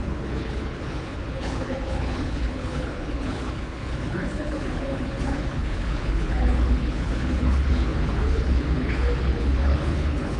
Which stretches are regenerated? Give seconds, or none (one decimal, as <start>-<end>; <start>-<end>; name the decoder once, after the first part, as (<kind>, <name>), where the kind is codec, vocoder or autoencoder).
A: 0.0-10.4 (codec, HILCodec)